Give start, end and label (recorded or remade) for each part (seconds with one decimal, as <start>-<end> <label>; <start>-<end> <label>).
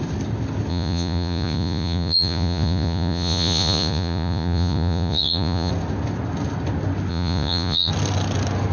0.0-0.7 recorded; 0.7-5.7 remade; 5.7-7.1 recorded; 7.1-7.9 remade; 7.9-8.7 recorded